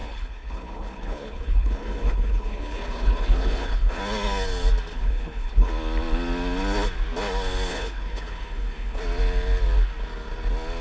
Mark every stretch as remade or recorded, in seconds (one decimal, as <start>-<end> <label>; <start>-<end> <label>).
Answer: 0.0-4.0 remade; 4.0-4.9 recorded; 4.9-5.7 remade; 5.7-7.7 recorded; 7.7-9.0 remade; 9.0-10.8 recorded